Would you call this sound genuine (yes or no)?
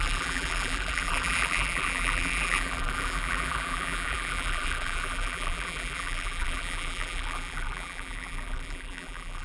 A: no